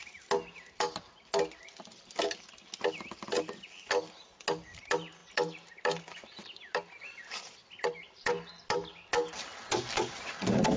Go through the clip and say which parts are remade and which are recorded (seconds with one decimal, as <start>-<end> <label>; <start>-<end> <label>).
0.0-10.8 recorded